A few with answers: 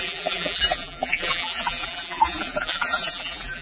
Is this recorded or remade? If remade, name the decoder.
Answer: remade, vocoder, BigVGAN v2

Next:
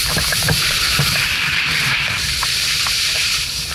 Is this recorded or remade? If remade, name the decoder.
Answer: remade, vocoder, BigVGAN v2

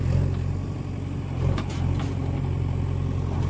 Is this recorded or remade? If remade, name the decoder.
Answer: recorded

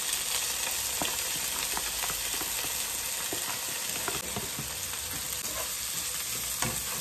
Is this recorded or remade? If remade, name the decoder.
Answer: recorded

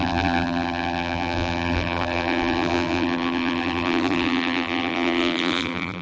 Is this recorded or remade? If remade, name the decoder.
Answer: remade, vocoder, BigVGAN v2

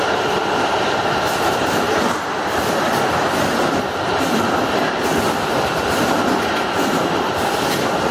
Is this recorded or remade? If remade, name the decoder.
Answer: remade, vocoder, BigVGAN v2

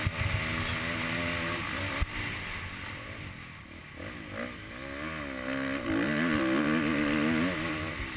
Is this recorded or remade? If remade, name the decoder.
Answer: recorded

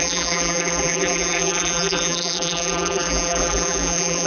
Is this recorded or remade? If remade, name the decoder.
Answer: remade, vocoder, BigVGAN v2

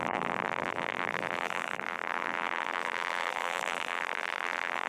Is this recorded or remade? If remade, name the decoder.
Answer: remade, vocoder, BigVGAN v2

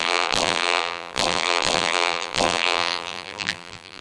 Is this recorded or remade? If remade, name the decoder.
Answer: remade, vocoder, BigVGAN v2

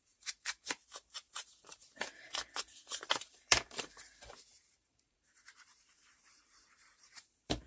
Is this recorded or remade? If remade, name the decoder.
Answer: remade, vocoder, BigVGAN v2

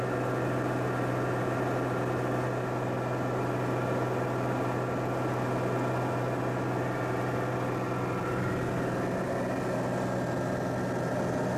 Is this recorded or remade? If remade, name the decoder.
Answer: recorded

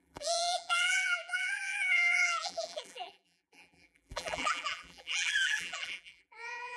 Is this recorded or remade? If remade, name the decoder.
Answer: remade, vocoder, BigVGAN v2